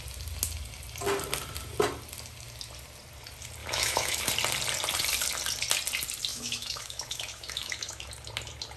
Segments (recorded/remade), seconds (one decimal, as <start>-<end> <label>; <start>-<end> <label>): 0.0-3.6 recorded; 3.6-4.3 remade; 4.3-6.3 recorded; 6.3-8.1 remade; 8.1-8.8 recorded